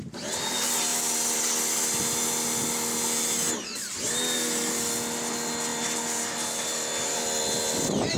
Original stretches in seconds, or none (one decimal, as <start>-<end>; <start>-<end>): 0.0-8.2